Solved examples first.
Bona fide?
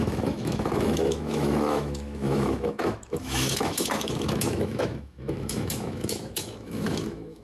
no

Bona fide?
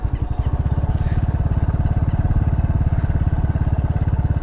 yes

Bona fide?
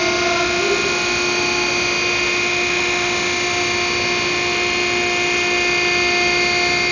yes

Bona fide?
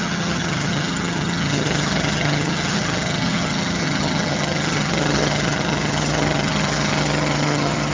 no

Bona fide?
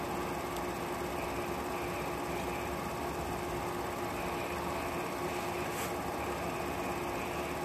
yes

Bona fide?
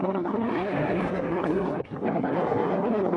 no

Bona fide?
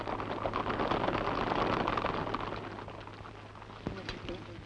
yes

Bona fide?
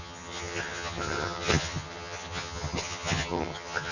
no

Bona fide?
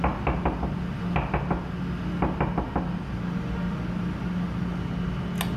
yes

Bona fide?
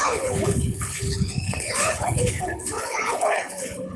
no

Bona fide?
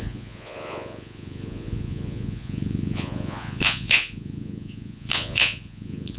no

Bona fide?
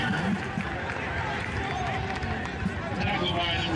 yes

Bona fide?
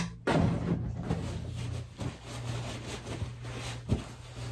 yes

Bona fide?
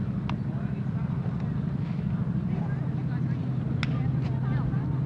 yes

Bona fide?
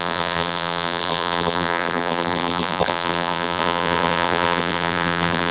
no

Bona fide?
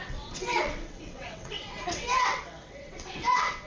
no